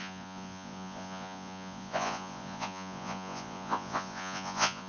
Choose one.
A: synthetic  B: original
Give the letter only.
A